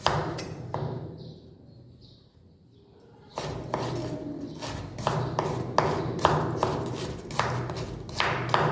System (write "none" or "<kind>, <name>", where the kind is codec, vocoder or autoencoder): none